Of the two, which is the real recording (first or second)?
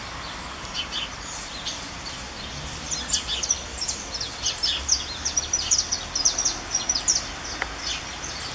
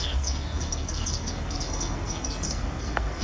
first